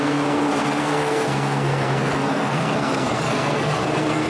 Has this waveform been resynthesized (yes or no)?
yes